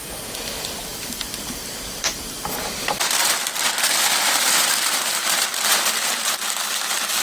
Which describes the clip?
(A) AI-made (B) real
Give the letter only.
A